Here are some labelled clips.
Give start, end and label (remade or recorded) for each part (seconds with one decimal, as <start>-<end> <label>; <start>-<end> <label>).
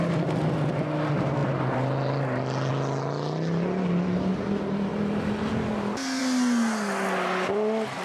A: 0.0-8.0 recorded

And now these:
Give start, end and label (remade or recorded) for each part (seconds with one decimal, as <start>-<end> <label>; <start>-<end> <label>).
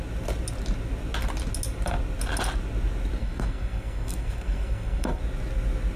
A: 0.0-3.2 recorded; 3.2-5.2 remade; 5.2-6.0 recorded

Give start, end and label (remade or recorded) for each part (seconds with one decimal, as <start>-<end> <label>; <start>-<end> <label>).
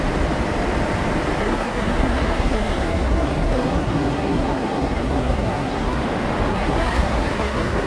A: 0.0-1.4 recorded; 1.4-6.0 remade; 6.0-6.5 recorded; 6.5-7.9 remade